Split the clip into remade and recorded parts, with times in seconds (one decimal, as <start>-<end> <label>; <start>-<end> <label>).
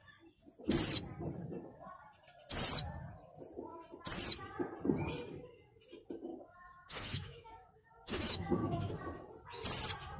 0.0-6.3 recorded; 6.3-8.9 remade; 8.9-10.2 recorded